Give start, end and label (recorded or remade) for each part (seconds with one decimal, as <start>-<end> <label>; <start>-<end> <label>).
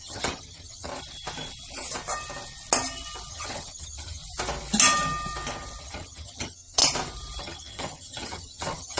0.0-0.9 remade; 0.9-3.3 recorded; 3.3-4.2 remade; 4.2-5.8 recorded; 5.8-6.8 remade; 6.8-7.4 recorded; 7.4-9.0 remade